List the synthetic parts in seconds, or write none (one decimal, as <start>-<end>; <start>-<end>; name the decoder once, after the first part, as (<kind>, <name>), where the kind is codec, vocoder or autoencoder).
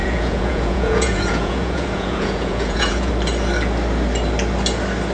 0.0-3.1 (vocoder, Vocos)